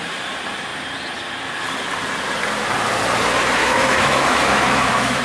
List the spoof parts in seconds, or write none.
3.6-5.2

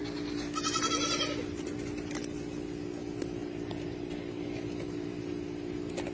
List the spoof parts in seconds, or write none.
none

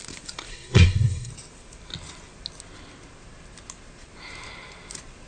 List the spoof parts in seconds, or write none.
0.5-1.3

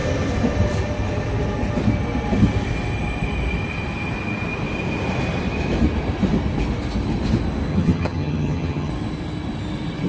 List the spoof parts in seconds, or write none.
7.7-8.9

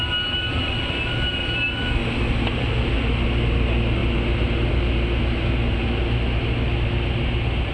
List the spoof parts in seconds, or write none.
none

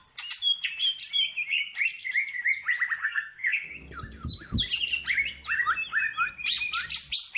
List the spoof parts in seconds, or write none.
3.0-3.7

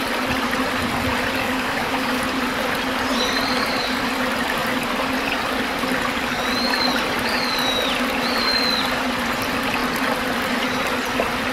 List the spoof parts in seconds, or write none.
1.4-2.2

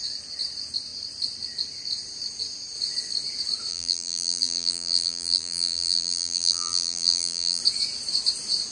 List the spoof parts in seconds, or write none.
3.7-7.6